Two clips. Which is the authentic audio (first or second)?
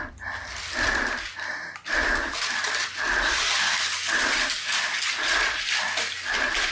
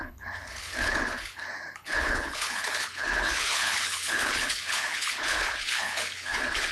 first